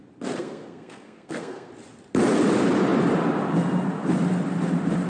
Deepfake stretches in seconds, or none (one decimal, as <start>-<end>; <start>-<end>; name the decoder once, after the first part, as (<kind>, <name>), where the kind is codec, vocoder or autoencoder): 0.4-1.7 (codec, SNAC)

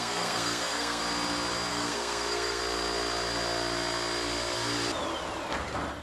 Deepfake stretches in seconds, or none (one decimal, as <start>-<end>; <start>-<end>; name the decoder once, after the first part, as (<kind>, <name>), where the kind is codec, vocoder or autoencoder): 0.0-1.0 (codec, SNAC); 1.7-2.6

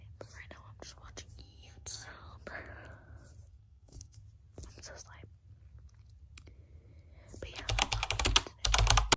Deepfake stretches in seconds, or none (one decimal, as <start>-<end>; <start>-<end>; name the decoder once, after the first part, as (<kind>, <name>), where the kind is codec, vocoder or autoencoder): 1.4-2.1 (codec, SNAC); 3.5-4.2

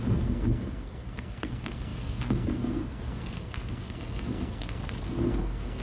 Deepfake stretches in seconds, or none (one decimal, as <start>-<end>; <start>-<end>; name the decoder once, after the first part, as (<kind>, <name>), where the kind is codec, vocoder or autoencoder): 0.0-5.8 (codec, SNAC)

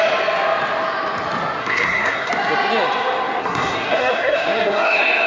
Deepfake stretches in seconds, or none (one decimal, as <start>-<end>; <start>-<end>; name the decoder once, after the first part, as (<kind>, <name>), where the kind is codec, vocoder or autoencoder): 1.6-2.3 (codec, SNAC); 3.4-5.3

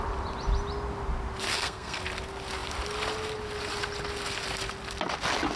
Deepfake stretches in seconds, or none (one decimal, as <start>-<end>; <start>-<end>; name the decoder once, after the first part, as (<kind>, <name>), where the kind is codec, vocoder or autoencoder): 1.5-2.0 (codec, SNAC)

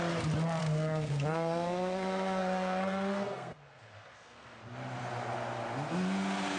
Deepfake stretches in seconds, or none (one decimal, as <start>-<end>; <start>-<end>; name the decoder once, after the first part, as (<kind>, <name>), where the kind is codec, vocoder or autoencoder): 0.6-4.6 (codec, SNAC)